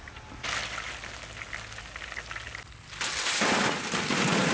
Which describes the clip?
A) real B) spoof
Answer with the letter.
A